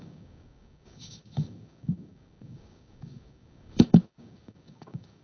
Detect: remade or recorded remade